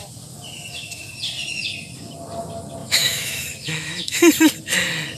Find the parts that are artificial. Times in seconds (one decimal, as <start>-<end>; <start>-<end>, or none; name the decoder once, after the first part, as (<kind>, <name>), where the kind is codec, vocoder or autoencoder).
2.8-4.2 (autoencoder, DAC-VAE)